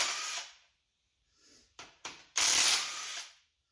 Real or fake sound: real